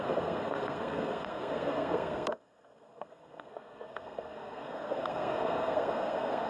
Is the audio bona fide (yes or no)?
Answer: no